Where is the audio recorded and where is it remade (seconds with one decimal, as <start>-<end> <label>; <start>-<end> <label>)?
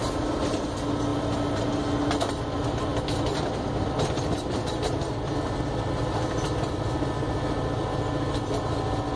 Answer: 0.0-9.2 recorded